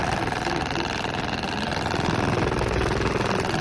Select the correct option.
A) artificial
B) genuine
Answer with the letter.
B